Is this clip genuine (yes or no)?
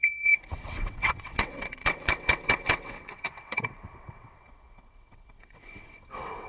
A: no